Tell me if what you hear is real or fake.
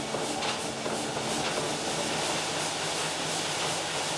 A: real